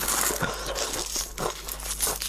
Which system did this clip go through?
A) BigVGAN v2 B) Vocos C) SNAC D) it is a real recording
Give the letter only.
D